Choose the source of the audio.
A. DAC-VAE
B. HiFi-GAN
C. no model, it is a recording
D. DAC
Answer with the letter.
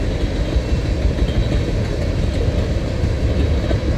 C